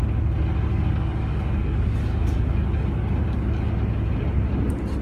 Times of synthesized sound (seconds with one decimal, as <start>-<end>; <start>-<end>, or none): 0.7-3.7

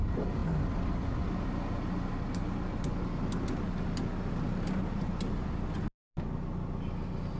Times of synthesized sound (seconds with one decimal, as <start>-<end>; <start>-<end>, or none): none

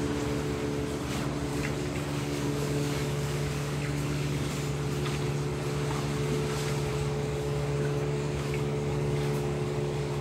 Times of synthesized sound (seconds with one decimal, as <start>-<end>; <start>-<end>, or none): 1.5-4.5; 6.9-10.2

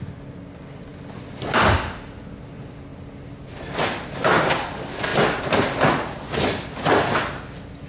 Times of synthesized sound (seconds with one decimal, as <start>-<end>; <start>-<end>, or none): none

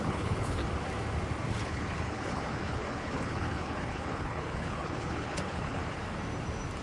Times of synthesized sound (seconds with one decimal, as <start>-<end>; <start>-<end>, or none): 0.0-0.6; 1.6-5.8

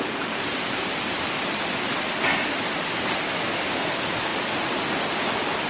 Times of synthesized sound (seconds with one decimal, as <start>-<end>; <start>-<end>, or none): none